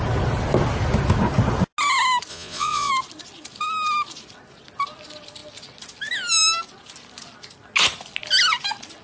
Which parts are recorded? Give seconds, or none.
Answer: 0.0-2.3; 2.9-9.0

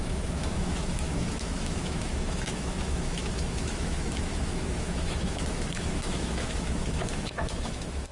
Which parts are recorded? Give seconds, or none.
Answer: none